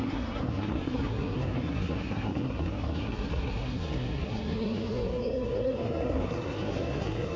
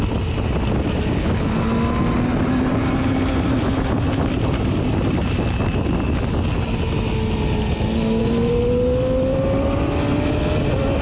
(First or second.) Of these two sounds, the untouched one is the second